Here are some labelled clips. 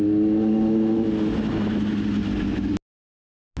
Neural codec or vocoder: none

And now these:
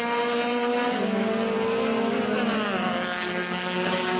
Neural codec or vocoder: none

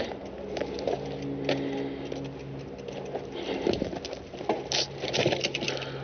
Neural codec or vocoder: none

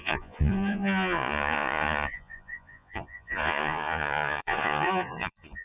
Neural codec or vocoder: vocoder, Vocos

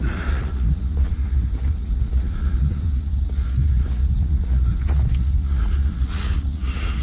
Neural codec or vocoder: vocoder, Vocos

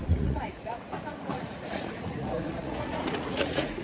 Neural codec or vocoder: vocoder, Vocos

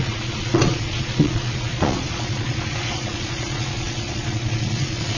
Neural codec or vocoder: vocoder, Vocos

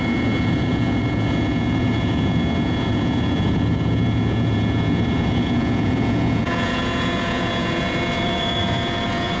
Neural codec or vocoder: vocoder, Vocos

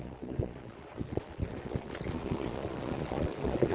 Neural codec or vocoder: vocoder, Vocos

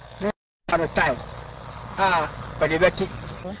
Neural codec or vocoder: none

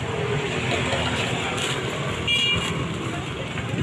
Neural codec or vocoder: none